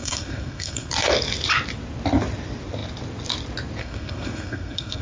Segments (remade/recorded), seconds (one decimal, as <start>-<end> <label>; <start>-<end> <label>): 0.0-0.9 remade; 0.9-3.8 recorded; 3.8-5.0 remade